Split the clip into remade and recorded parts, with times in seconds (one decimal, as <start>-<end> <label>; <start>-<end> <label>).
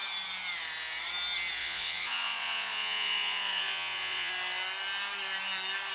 0.0-1.6 recorded; 1.6-4.3 remade; 4.3-5.9 recorded